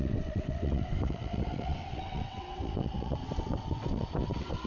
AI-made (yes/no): yes